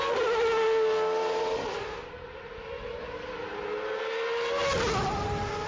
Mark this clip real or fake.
real